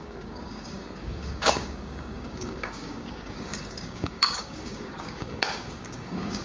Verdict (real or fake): fake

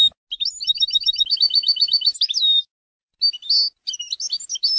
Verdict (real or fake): real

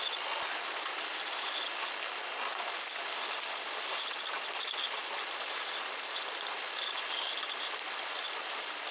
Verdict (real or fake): real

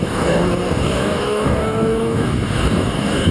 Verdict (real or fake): fake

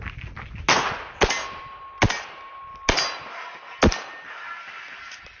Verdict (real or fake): real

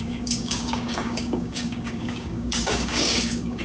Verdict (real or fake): fake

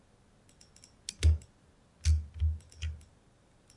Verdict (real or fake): real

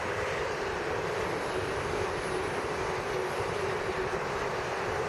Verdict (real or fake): real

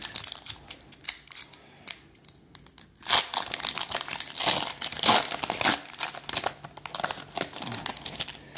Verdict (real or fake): real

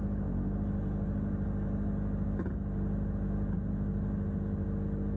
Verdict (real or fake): real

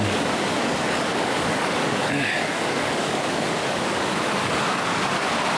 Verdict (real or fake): fake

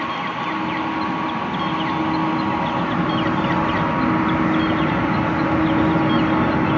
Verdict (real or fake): real